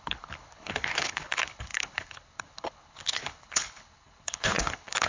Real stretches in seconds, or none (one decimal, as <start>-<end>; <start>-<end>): none